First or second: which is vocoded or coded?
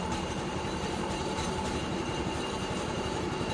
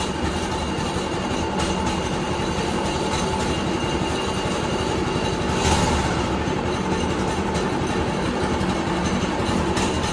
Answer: first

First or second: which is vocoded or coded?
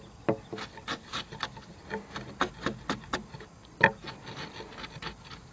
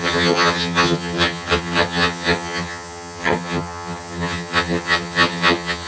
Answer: second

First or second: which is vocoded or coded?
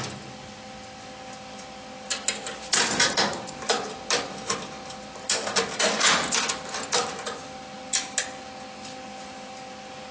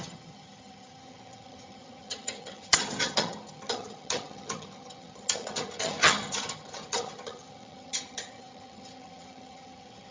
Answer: second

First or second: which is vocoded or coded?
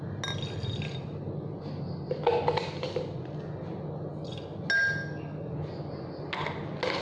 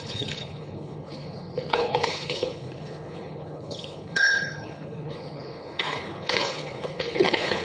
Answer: second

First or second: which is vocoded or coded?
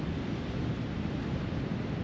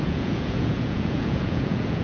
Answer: second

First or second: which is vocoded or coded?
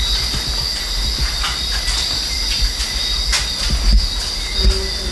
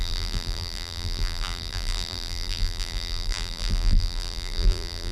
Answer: second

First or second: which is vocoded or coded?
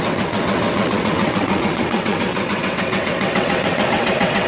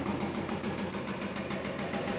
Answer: first